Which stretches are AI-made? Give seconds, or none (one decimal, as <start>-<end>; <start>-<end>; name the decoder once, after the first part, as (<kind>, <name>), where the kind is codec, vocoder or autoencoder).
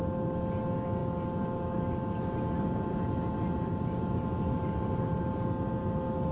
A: none